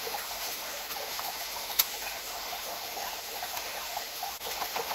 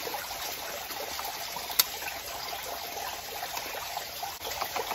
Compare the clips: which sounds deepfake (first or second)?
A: first